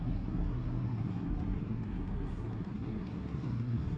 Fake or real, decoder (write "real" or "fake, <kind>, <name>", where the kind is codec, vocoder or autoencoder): fake, codec, SNAC